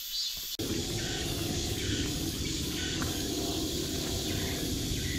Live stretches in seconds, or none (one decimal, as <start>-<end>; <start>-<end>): 0.0-0.8; 3.4-5.2